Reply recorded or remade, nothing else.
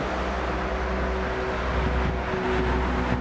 recorded